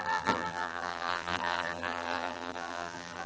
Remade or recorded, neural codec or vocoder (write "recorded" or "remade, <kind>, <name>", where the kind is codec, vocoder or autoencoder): remade, vocoder, BigVGAN v2